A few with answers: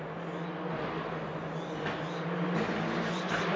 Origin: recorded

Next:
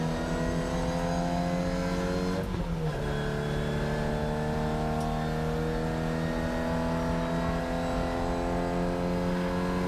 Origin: recorded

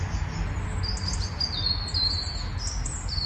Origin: recorded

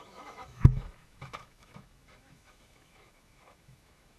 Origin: remade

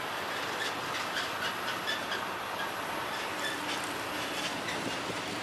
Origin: recorded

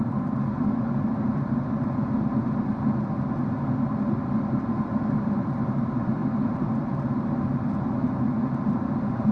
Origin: recorded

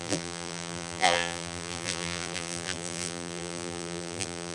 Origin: remade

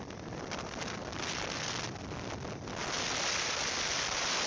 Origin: recorded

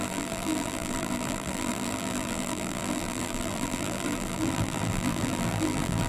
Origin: remade